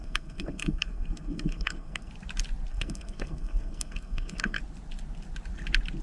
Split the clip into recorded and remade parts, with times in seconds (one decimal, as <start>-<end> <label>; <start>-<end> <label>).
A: 0.0-2.1 remade; 2.1-2.7 recorded; 2.7-4.6 remade; 4.6-6.0 recorded